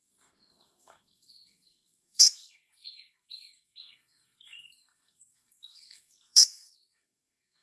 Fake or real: fake